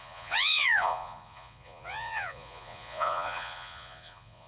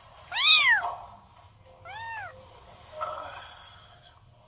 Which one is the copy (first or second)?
first